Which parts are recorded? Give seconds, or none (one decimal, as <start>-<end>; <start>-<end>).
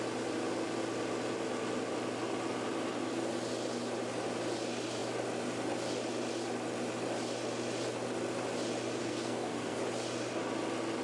0.0-9.0; 9.8-11.0